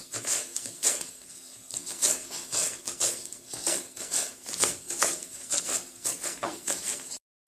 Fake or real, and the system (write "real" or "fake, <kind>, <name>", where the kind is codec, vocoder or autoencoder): fake, codec, SNAC